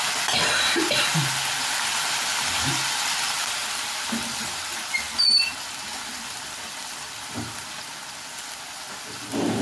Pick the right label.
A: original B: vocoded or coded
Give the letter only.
B